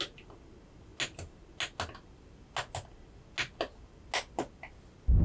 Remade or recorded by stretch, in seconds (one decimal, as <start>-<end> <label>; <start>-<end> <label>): 0.0-5.2 recorded